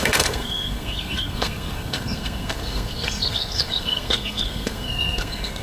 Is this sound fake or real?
fake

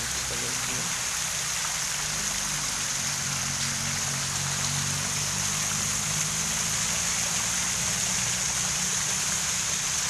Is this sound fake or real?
real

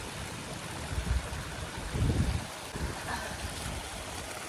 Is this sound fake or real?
real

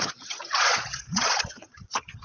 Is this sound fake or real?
fake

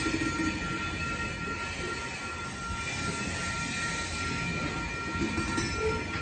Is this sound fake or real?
real